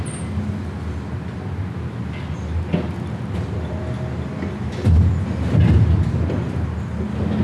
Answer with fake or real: real